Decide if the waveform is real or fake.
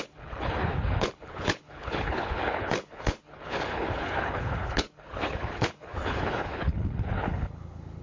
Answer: fake